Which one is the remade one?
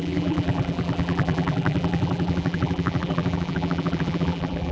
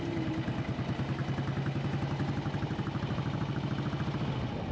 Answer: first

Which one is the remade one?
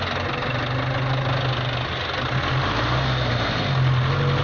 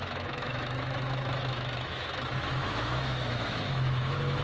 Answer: second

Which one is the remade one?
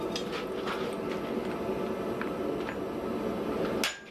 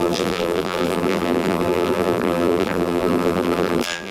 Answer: second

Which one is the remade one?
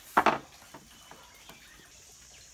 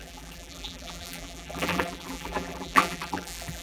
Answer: second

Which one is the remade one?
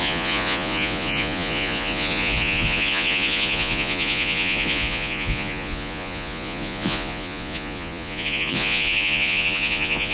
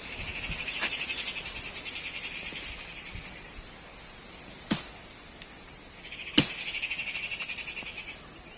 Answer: first